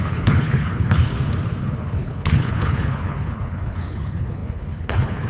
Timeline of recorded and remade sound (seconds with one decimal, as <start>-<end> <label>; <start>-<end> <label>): 0.0-1.1 remade; 1.1-1.6 recorded; 1.6-5.3 remade